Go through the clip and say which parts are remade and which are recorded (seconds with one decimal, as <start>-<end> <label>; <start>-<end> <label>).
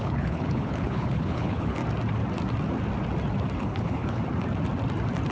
0.0-1.8 remade; 1.8-3.6 recorded; 3.6-4.2 remade; 4.2-5.3 recorded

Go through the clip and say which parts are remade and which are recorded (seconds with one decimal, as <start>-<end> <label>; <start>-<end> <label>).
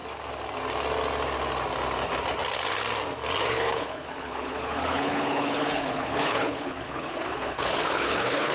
0.0-3.5 recorded; 3.5-8.5 remade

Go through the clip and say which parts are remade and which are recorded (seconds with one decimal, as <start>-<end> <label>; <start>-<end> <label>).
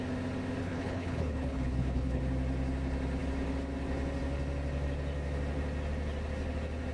0.0-0.6 recorded; 0.6-2.2 remade; 2.2-6.9 recorded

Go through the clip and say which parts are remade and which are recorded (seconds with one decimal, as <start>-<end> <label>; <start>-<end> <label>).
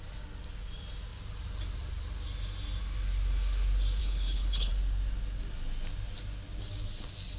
0.0-4.0 recorded; 4.0-4.7 remade; 4.7-7.4 recorded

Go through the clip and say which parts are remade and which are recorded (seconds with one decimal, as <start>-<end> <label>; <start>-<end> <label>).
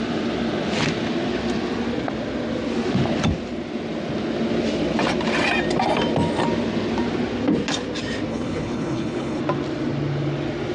0.0-8.3 recorded; 8.3-9.4 remade; 9.4-10.7 recorded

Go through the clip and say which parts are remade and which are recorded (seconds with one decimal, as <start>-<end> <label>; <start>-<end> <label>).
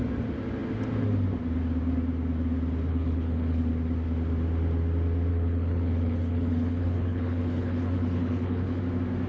0.0-2.9 recorded; 2.9-3.7 remade; 3.7-5.3 recorded; 5.3-8.8 remade; 8.8-9.3 recorded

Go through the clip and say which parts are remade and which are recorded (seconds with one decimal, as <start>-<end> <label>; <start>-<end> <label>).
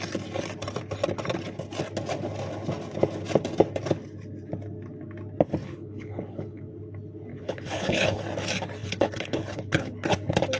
0.0-5.6 recorded; 5.6-6.6 remade; 6.6-7.3 recorded; 7.3-8.2 remade; 8.2-8.8 recorded; 8.8-9.9 remade; 9.9-10.6 recorded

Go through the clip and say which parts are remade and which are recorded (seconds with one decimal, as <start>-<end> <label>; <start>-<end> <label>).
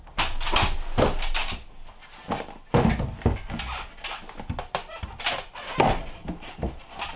0.0-7.2 recorded